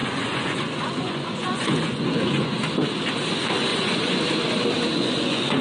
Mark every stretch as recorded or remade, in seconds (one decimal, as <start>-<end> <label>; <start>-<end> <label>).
0.0-2.6 remade; 2.6-3.7 recorded; 3.7-4.2 remade; 4.2-4.9 recorded; 4.9-5.6 remade